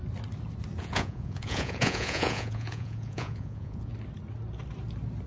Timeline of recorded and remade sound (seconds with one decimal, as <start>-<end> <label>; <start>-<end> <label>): 0.0-0.8 recorded; 0.8-3.9 remade; 3.9-5.3 recorded